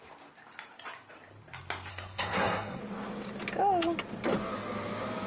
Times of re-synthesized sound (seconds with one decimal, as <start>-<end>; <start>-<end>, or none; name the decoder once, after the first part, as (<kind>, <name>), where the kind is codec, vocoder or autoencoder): 1.9-2.8 (codec, SNAC)

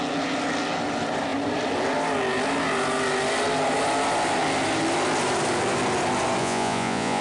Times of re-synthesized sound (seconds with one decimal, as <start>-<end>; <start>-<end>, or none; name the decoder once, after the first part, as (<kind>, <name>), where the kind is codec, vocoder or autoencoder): 6.4-7.2 (vocoder, Vocos)

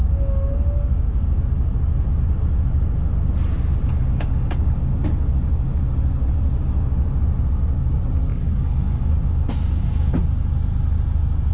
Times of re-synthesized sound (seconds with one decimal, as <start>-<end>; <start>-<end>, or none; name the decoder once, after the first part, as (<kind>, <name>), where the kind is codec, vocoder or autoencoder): 0.0-1.4 (codec, DAC); 3.9-4.9; 8.3-10.1